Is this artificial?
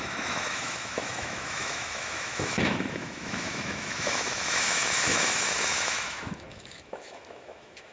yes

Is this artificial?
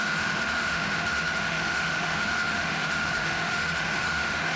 yes